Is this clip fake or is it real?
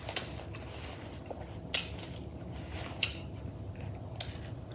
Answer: real